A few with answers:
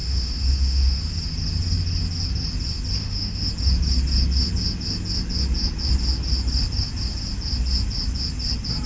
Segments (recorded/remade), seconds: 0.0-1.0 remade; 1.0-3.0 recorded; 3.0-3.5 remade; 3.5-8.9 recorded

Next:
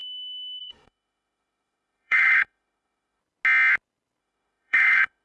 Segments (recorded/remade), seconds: 0.0-3.2 remade; 3.2-4.2 recorded; 4.2-5.2 remade

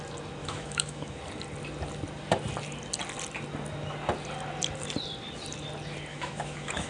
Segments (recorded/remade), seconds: 0.0-0.4 recorded; 0.4-1.2 remade; 1.2-6.1 recorded; 6.1-6.9 remade

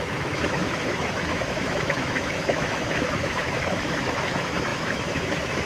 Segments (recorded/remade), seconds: 0.0-5.7 remade